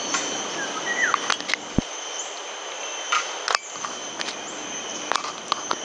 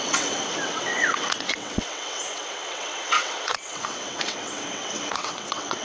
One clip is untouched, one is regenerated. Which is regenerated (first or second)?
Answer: second